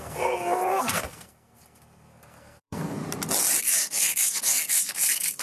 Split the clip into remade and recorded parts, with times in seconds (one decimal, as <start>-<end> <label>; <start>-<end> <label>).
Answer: 0.0-3.0 remade; 3.0-3.6 recorded; 3.6-5.4 remade

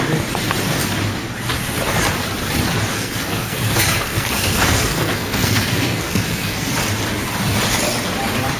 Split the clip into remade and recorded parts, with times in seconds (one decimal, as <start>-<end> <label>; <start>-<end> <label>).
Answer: 0.0-2.9 recorded; 2.9-6.7 remade; 6.7-8.6 recorded

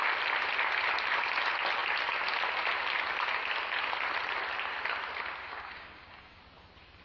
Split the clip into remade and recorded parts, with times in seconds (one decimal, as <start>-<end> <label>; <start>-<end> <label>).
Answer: 0.0-5.4 recorded; 5.4-6.4 remade; 6.4-7.0 recorded

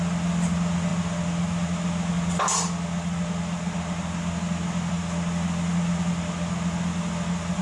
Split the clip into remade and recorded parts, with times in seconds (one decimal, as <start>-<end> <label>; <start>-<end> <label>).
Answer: 0.0-7.6 recorded

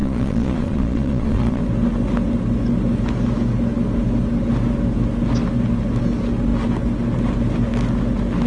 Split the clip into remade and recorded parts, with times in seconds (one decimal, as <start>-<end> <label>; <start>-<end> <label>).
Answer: 0.0-1.6 remade; 1.6-8.5 recorded

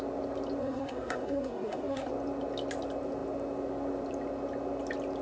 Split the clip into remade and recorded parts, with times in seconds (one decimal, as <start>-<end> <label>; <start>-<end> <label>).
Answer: 0.0-0.6 recorded; 0.6-2.1 remade; 2.1-5.2 recorded

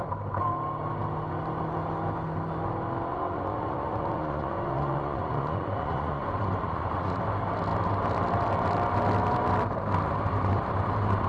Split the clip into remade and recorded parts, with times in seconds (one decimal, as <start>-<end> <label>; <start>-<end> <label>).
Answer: 0.0-3.1 recorded; 3.1-7.2 remade; 7.2-11.3 recorded

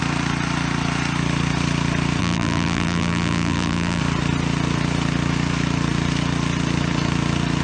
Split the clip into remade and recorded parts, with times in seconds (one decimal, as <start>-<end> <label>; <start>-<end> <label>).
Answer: 0.0-2.2 recorded; 2.2-4.0 remade; 4.0-7.6 recorded